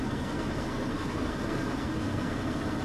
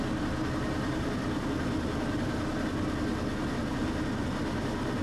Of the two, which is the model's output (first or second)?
first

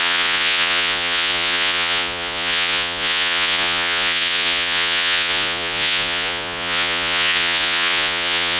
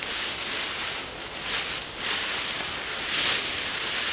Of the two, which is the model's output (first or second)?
first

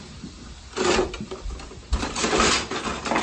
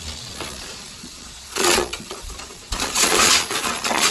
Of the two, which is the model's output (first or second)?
second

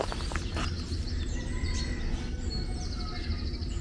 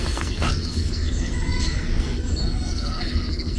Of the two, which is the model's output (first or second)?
second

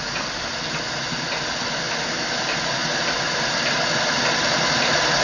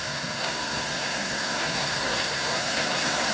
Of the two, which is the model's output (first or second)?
second